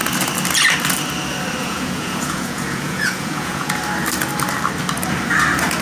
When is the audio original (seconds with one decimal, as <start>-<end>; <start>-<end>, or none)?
0.0-1.6; 3.8-5.8